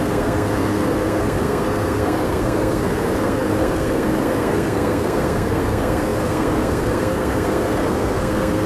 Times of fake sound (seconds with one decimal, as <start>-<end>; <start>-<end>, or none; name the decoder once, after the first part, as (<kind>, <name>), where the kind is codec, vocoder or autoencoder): 0.0-8.7 (codec, SNAC)